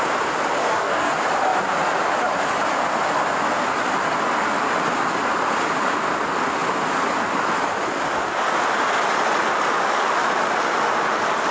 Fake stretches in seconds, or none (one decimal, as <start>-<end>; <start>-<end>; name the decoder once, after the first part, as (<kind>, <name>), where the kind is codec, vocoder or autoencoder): 0.6-1.1 (codec, DAC)